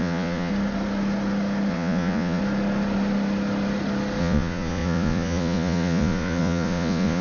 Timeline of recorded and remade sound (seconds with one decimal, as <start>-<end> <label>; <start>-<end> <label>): 0.0-0.5 remade; 0.5-1.7 recorded; 1.7-2.4 remade; 2.4-4.2 recorded; 4.2-7.2 remade